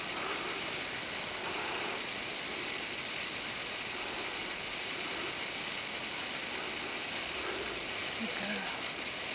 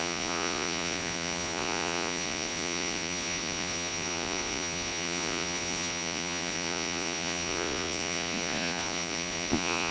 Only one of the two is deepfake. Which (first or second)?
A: second